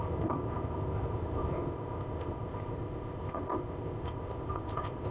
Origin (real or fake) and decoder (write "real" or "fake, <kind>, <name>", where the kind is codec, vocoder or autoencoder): fake, codec, ZipCodec